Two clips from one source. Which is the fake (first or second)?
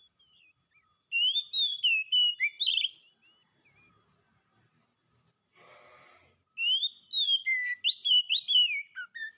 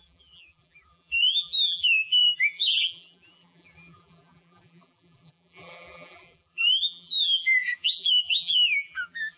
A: second